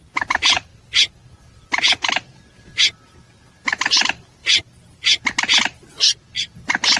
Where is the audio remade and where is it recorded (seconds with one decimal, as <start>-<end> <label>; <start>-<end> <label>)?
0.0-7.0 recorded